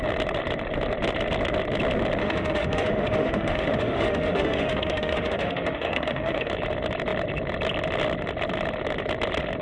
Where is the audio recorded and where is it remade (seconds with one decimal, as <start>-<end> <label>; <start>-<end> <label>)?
0.0-2.2 recorded; 2.2-6.5 remade; 6.5-9.6 recorded